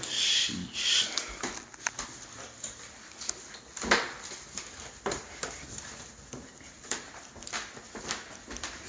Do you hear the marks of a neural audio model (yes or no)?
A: no